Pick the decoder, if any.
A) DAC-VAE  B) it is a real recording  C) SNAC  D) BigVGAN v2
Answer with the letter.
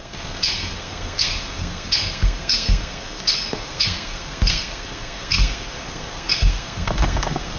C